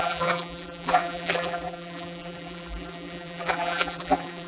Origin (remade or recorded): remade